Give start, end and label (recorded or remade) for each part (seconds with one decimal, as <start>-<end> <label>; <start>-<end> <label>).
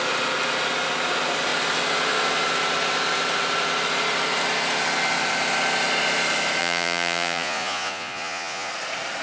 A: 0.0-6.6 recorded; 6.6-8.7 remade; 8.7-9.2 recorded